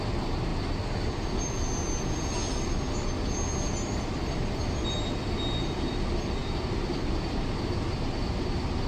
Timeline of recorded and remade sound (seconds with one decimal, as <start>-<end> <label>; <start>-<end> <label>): 0.0-8.9 recorded